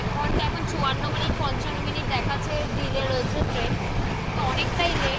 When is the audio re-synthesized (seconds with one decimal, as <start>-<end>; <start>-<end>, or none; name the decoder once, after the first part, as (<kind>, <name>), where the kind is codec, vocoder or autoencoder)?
none